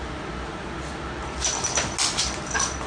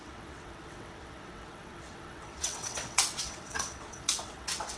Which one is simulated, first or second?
second